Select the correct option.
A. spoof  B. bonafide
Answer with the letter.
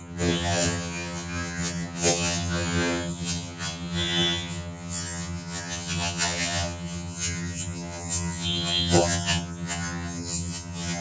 A